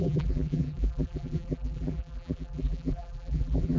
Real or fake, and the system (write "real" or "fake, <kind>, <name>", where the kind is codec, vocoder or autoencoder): fake, vocoder, BigVGAN v2